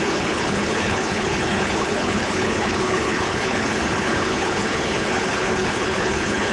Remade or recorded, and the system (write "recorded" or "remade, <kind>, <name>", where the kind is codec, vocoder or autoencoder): remade, codec, HILCodec